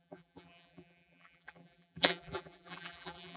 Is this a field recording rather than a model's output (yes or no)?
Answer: no